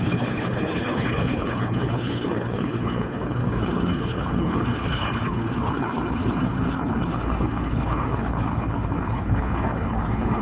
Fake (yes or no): yes